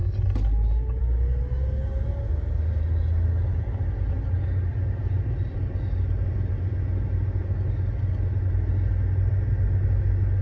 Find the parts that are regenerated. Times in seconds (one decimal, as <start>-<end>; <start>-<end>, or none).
none